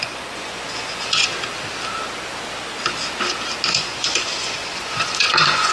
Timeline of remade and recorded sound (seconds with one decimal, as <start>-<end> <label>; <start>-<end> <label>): 0.0-1.3 remade; 1.3-3.7 recorded; 3.7-5.7 remade